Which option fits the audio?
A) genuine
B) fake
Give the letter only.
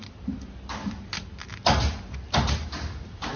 A